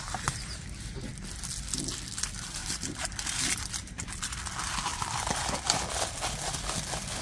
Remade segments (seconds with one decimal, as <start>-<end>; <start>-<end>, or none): 2.6-4.4; 4.9-5.9